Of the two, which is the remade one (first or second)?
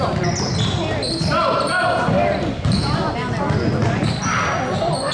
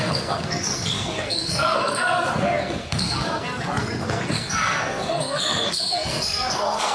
second